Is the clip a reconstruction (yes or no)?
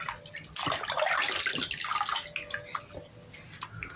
no